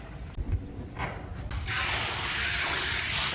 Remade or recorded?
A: recorded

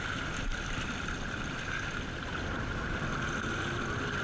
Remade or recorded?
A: recorded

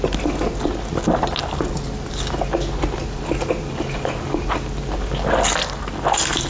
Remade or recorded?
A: recorded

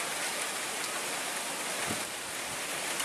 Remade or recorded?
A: recorded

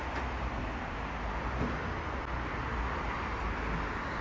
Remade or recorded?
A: recorded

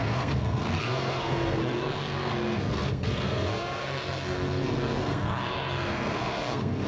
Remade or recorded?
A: remade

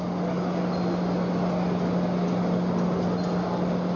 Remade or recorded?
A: recorded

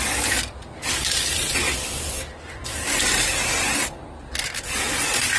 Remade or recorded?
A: recorded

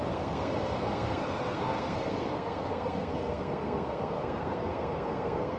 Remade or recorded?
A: remade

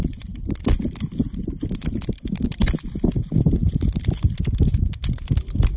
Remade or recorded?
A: recorded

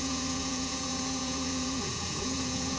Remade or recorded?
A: remade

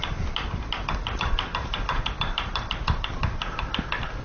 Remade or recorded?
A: remade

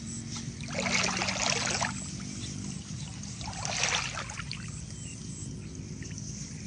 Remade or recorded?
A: recorded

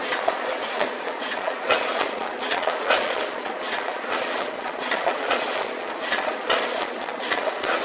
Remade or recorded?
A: remade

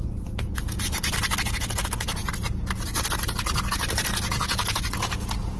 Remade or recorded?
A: remade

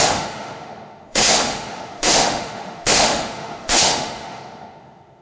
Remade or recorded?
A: remade